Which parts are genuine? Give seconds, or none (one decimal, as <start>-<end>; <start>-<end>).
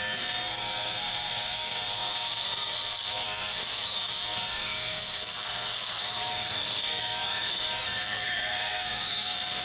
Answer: none